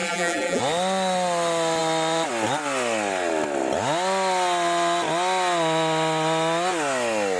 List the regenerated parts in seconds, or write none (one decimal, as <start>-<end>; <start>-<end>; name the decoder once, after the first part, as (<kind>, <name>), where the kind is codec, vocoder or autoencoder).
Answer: 0.0-0.6 (vocoder, BigVGAN v2)